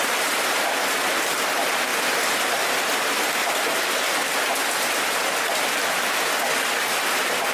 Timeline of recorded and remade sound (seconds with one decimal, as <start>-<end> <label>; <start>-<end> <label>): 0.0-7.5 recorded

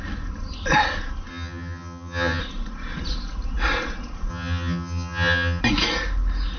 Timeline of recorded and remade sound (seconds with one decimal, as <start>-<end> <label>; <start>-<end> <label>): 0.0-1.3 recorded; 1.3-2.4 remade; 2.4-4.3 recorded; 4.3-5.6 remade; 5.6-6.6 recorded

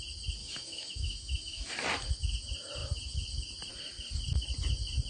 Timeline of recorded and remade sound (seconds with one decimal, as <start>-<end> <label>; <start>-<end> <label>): 0.0-0.4 recorded; 0.4-1.7 remade; 1.7-5.1 recorded

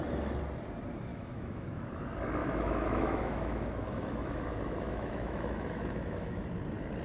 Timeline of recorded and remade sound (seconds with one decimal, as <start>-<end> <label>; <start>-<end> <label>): 0.0-1.1 recorded; 1.1-1.9 remade; 1.9-2.4 recorded; 2.4-6.4 remade; 6.4-7.0 recorded